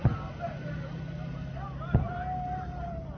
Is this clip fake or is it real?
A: real